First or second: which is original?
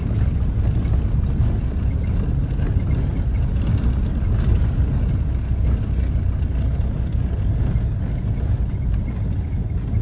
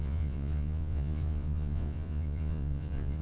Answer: first